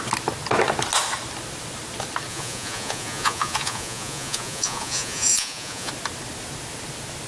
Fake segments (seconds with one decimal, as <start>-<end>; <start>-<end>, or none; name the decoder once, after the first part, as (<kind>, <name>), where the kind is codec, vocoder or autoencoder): 2.3-5.9 (vocoder, Vocos)